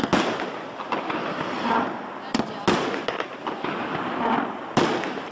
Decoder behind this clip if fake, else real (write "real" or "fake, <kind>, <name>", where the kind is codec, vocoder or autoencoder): real